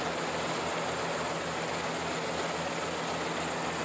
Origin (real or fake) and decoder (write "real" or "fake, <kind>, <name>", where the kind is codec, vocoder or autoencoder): real